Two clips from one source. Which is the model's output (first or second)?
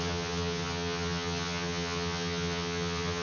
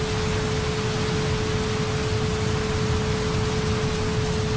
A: first